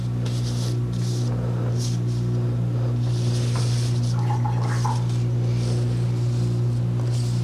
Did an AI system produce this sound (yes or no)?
no